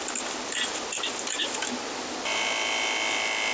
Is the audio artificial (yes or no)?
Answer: no